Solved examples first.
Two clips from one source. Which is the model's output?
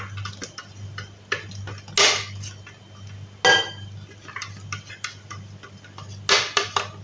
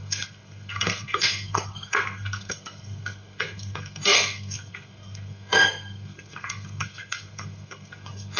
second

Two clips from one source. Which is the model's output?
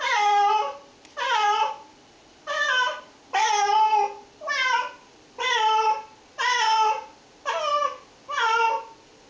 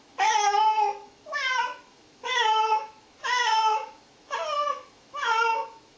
second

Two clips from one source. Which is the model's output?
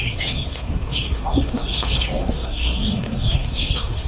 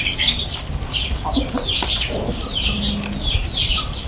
first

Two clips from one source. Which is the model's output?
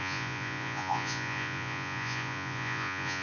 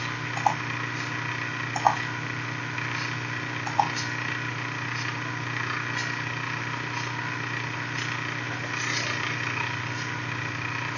first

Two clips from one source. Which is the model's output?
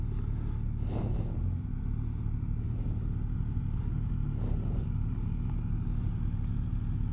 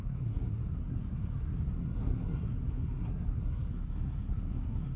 second